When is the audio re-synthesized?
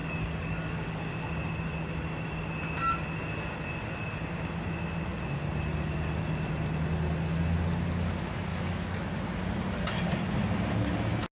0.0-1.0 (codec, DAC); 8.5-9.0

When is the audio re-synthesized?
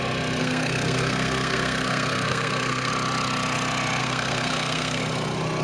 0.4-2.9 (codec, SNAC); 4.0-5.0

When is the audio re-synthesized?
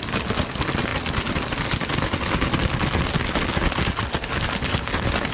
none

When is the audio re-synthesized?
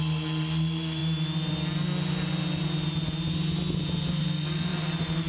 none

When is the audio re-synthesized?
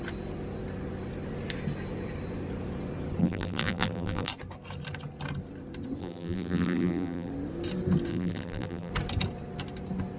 3.2-4.3 (vocoder, BigVGAN v2); 6.0-7.3; 8.1-8.9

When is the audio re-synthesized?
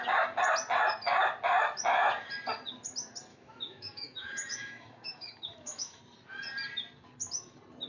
3.3-6.0 (autoencoder, DAC-VAE)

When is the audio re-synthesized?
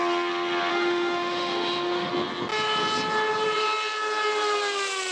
0.7-2.1 (autoencoder, DAC-VAE)